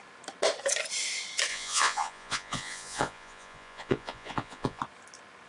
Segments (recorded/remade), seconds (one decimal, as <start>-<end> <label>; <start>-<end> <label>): 0.0-1.5 recorded; 1.5-4.8 remade; 4.8-5.5 recorded